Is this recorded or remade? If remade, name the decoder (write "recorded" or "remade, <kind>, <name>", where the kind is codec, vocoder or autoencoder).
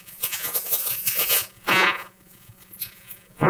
remade, vocoder, Vocos